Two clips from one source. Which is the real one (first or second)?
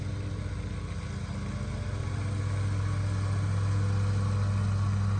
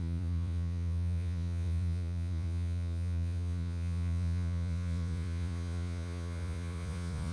first